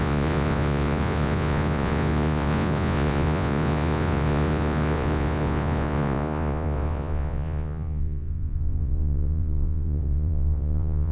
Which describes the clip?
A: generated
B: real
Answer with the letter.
A